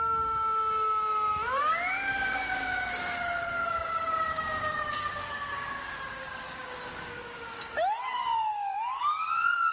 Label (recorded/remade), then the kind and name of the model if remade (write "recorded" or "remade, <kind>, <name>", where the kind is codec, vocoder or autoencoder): remade, codec, DAC